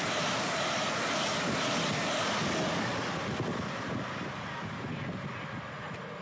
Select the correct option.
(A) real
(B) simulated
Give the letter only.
A